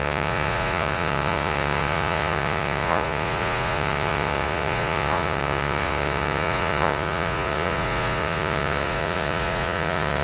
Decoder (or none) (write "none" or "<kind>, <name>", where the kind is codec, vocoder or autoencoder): vocoder, Vocos